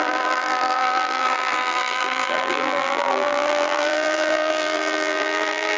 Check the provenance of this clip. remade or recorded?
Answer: remade